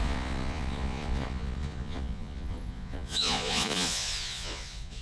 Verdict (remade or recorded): remade